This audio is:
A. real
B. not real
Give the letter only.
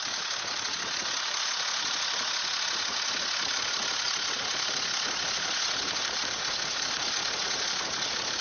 B